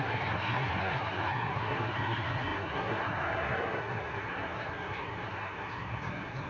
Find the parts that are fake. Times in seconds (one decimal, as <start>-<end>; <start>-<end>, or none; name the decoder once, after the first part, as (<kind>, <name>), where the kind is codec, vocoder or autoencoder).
0.0-6.5 (codec, SNAC)